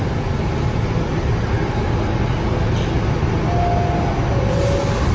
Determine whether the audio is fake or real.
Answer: real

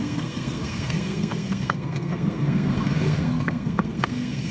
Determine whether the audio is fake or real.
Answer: fake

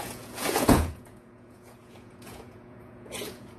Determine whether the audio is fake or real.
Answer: fake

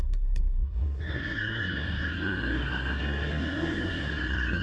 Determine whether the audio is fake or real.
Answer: fake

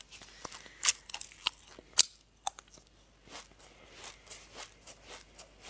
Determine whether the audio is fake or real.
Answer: real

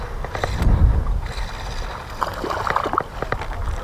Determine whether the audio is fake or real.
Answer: real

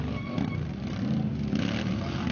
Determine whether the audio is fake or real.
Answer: real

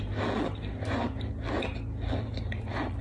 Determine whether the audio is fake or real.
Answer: real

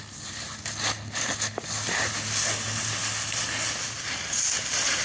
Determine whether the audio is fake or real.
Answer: real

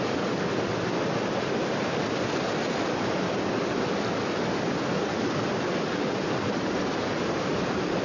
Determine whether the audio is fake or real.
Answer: real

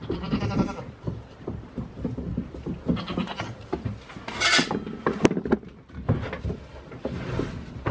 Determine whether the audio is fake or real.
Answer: real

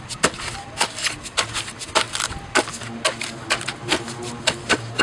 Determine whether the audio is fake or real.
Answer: real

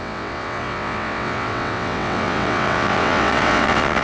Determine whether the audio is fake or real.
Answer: fake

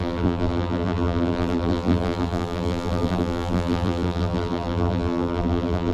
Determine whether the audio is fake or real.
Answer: fake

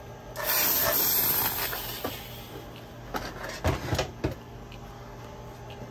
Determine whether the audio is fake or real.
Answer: real